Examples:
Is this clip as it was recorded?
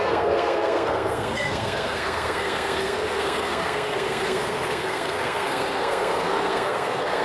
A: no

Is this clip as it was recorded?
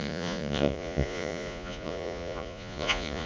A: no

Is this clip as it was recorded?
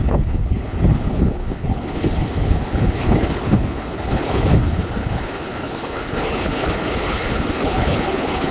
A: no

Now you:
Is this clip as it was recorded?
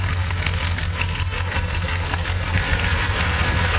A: no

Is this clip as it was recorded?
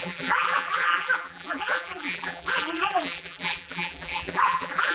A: no